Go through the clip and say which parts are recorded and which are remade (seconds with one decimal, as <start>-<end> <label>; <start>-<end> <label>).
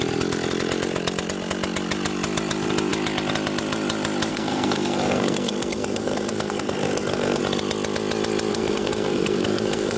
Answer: 0.0-4.3 recorded; 4.3-7.4 remade; 7.4-8.5 recorded; 8.5-10.0 remade